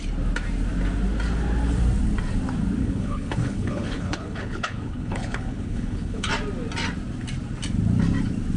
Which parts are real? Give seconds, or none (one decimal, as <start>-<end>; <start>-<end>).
0.0-2.8; 6.3-8.6